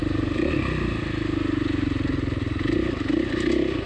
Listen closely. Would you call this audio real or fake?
real